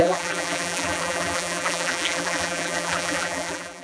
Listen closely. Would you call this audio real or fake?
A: fake